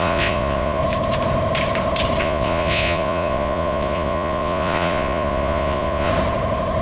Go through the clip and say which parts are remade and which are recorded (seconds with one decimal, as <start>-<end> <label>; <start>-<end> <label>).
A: 0.0-0.8 remade; 0.8-2.2 recorded; 2.2-6.1 remade; 6.1-6.8 recorded